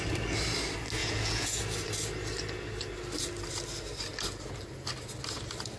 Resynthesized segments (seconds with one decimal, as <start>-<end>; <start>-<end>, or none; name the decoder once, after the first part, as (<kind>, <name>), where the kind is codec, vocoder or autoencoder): 1.0-1.6 (vocoder, Vocos)